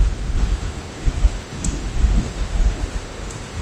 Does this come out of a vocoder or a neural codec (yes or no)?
yes